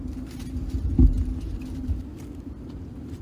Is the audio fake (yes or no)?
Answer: yes